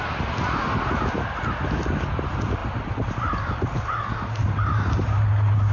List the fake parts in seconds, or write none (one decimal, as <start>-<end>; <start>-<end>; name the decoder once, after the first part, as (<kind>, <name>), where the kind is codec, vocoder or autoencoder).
2.6-4.4 (vocoder, BigVGAN v2)